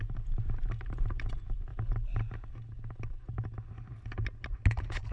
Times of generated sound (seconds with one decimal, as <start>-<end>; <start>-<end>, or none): 0.0-1.7